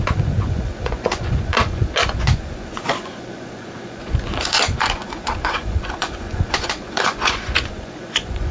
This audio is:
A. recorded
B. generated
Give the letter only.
B